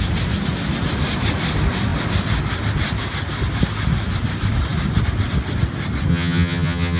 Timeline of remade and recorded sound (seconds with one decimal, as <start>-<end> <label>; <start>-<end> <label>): 0.0-6.1 recorded; 6.1-7.0 remade